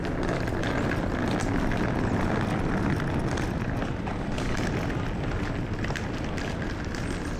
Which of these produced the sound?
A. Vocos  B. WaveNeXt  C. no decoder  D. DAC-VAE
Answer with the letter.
C